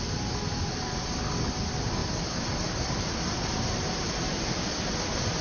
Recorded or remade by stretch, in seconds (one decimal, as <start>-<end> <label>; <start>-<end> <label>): 0.0-2.0 recorded; 2.0-5.4 remade